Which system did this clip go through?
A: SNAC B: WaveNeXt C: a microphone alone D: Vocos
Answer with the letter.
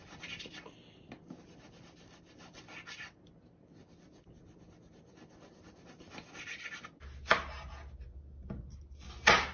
C